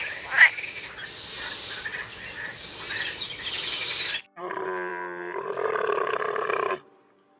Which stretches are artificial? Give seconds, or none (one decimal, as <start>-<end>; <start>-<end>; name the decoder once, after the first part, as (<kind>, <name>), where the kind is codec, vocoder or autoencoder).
none